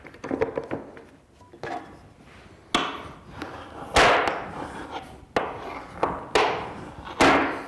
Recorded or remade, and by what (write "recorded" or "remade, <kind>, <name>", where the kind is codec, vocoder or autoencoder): recorded